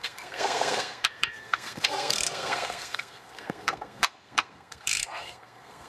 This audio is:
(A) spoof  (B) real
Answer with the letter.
A